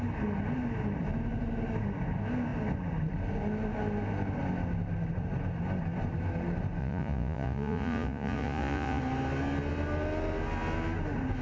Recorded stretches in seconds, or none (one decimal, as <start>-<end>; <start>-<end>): 0.0-6.8; 9.0-11.4